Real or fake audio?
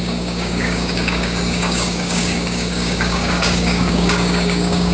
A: fake